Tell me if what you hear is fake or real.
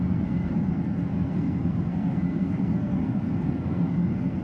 fake